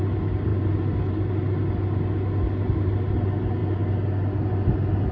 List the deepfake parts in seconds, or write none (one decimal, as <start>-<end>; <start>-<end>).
none

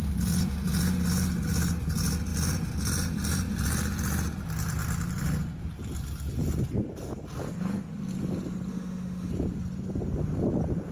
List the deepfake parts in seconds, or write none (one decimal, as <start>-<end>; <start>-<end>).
8.7-9.3

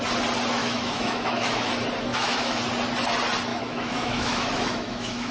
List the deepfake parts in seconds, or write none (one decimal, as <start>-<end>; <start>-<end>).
0.6-1.7; 2.1-2.6; 3.5-5.3

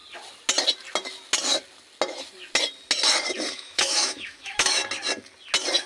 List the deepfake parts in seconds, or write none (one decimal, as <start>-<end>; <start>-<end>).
3.5-4.8